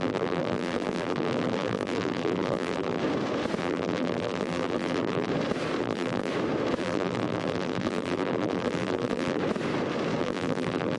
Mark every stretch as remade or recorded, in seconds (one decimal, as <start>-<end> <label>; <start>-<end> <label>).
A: 0.0-3.0 remade; 3.0-3.6 recorded; 3.6-5.3 remade; 5.3-5.8 recorded; 5.8-6.3 remade; 6.3-6.8 recorded; 6.8-9.4 remade; 9.4-10.2 recorded; 10.2-11.0 remade